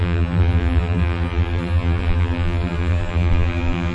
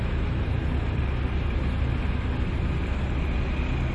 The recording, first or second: second